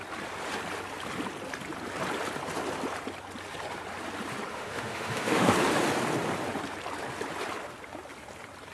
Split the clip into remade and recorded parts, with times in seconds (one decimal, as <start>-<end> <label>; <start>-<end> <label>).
0.0-4.5 recorded; 4.5-5.5 remade; 5.5-8.7 recorded